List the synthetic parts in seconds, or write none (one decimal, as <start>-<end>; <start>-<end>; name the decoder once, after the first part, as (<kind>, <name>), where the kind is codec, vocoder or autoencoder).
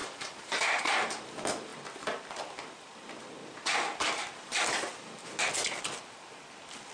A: 0.0-0.9 (vocoder, BigVGAN v2)